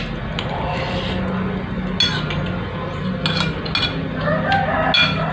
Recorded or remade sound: recorded